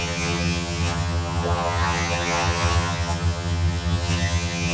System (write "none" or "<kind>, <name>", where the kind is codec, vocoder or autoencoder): vocoder, HiFi-GAN